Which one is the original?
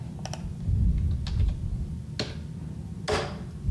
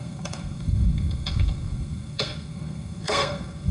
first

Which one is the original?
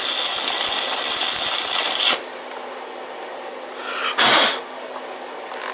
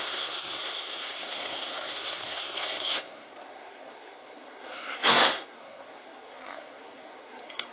first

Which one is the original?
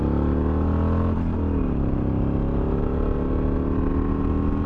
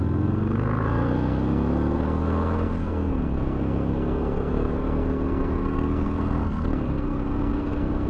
first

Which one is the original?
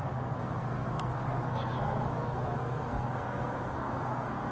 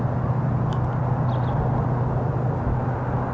second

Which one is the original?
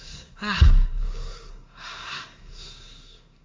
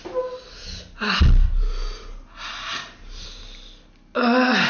second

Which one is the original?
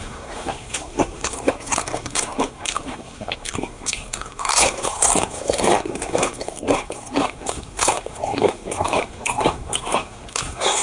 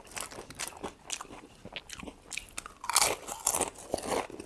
second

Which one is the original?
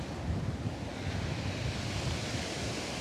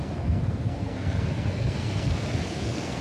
first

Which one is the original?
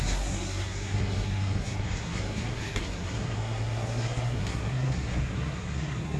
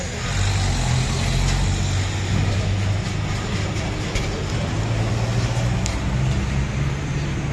second